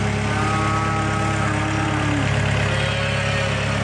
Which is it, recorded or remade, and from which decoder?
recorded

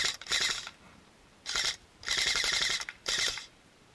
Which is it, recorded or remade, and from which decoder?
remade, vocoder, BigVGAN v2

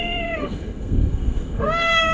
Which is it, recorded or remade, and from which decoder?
remade, codec, SNAC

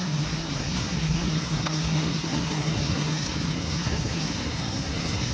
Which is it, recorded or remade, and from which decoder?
remade, codec, SNAC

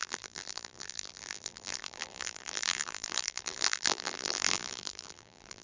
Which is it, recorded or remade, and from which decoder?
remade, vocoder, BigVGAN v2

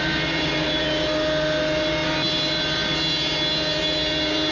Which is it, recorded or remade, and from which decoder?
recorded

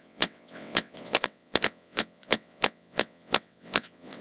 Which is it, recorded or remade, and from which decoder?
remade, vocoder, WaveNeXt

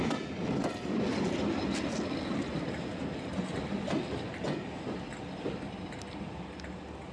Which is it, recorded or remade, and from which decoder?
recorded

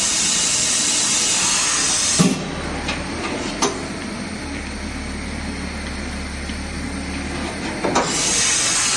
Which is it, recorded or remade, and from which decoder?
recorded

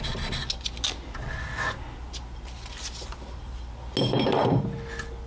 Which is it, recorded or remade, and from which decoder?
recorded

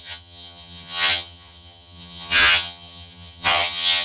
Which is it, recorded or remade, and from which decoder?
remade, vocoder, HiFi-GAN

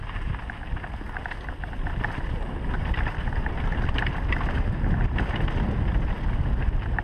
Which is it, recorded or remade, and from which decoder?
recorded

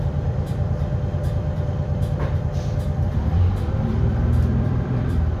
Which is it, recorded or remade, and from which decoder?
remade, vocoder, BigVGAN v2